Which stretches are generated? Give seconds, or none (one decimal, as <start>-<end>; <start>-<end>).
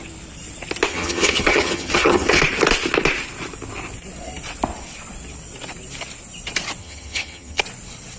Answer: 0.9-2.4; 6.8-7.6